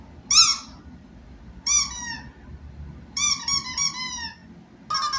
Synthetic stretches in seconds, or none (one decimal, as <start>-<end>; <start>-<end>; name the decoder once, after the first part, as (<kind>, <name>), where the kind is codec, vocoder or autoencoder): 0.5-1.1 (vocoder, BigVGAN v2)